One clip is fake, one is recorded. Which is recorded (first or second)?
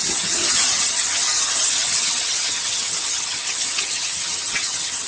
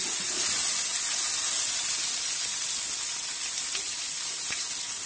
second